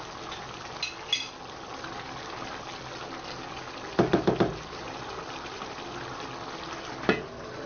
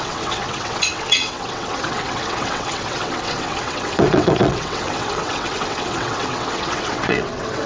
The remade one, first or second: second